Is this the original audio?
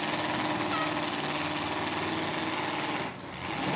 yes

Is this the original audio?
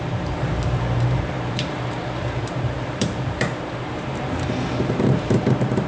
no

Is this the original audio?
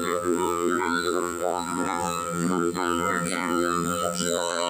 no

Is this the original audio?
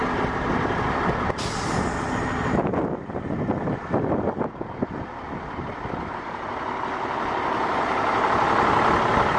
yes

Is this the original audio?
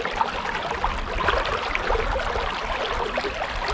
yes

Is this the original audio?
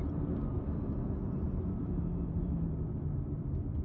no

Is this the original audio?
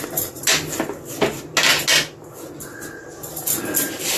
yes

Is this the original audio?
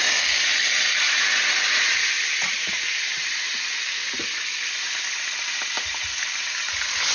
yes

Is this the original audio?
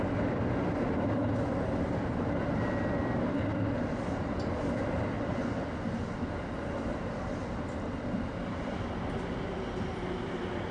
yes